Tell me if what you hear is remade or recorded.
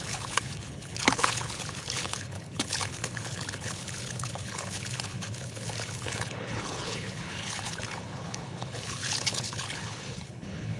remade